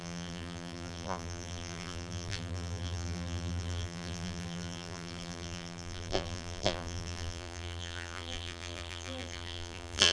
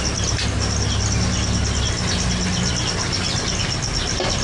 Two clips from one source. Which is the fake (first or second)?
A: first